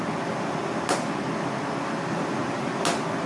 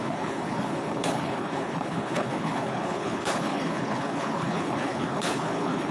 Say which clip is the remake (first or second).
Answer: second